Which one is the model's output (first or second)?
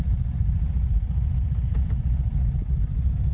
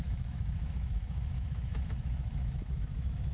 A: second